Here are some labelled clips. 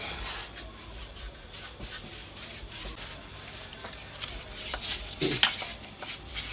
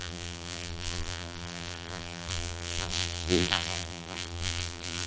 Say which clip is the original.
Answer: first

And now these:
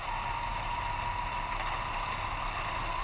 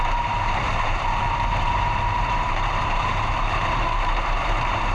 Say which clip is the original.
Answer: first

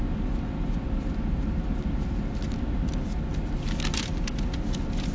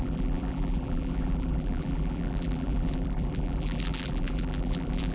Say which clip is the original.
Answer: first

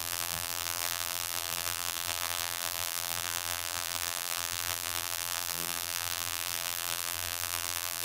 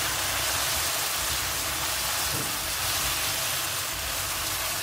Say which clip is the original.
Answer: second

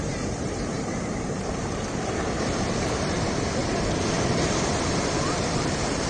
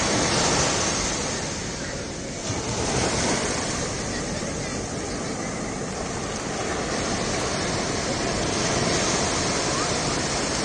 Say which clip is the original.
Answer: second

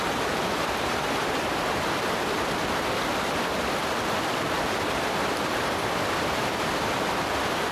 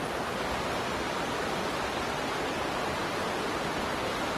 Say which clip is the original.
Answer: second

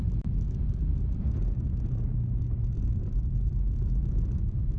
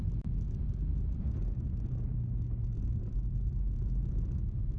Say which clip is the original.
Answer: second